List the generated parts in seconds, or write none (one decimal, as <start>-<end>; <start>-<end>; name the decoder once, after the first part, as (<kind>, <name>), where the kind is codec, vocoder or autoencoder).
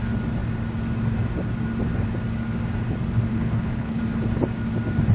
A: 3.3-4.0 (codec, HILCodec)